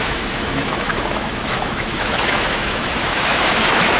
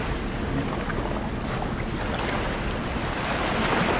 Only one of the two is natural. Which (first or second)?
second